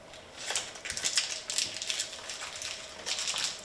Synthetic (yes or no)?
no